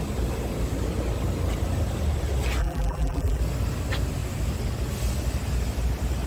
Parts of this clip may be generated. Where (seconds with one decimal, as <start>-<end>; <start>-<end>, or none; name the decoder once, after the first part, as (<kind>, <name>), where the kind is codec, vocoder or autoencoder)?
2.6-3.4 (vocoder, BigVGAN v2)